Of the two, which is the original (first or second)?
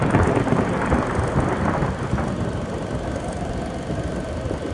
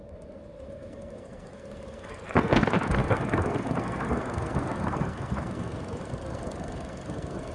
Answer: first